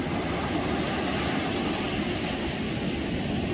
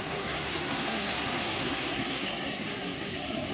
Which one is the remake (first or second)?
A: second